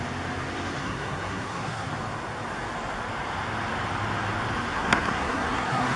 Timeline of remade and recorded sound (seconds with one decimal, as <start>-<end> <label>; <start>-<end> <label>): 0.0-0.8 recorded; 0.8-1.9 remade; 1.9-4.7 recorded; 4.7-6.0 remade